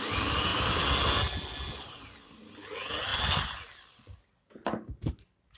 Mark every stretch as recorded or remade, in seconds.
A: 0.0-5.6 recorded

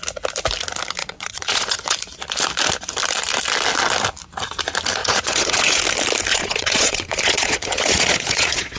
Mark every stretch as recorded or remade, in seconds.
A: 0.0-1.0 recorded; 1.0-2.0 remade; 2.0-5.0 recorded; 5.0-5.8 remade; 5.8-6.3 recorded; 6.3-8.8 remade

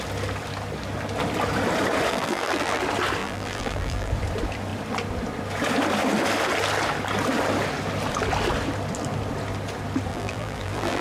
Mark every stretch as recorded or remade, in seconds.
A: 0.0-2.1 recorded; 2.1-2.8 remade; 2.8-3.2 recorded; 3.2-4.1 remade; 4.1-10.1 recorded; 10.1-11.0 remade

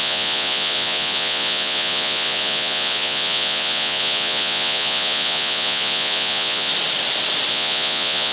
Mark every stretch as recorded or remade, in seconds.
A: 0.0-6.7 remade; 6.7-7.5 recorded; 7.5-8.3 remade

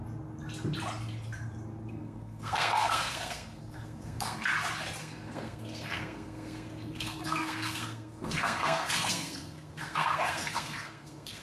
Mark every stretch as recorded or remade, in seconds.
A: 0.0-1.9 recorded; 1.9-4.5 remade; 4.5-5.0 recorded; 5.0-11.4 remade

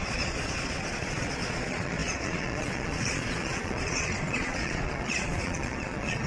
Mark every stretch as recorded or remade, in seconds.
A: 0.0-6.3 remade

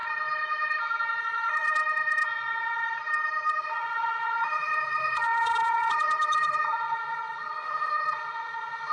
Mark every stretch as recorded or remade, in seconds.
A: 0.0-1.2 recorded; 1.2-1.7 remade; 1.7-3.6 recorded; 3.6-8.9 remade